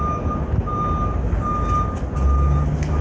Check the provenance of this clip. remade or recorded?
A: recorded